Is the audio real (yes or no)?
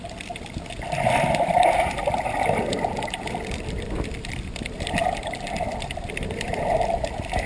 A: no